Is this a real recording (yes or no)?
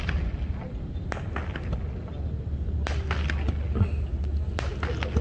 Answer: yes